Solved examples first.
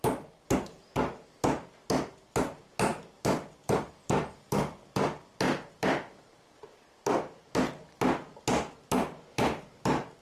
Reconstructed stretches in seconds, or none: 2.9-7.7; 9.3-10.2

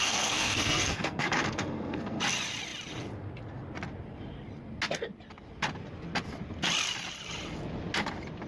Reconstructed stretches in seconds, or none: 0.0-2.2

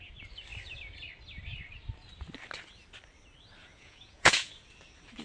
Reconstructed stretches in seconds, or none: 3.6-4.5

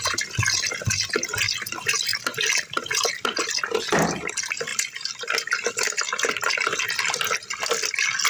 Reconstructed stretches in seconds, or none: none

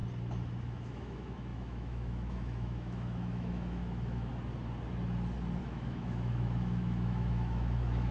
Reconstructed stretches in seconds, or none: 0.6-4.3; 5.6-8.1